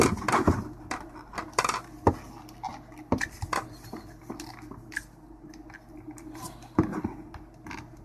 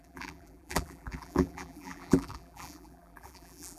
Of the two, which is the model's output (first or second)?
second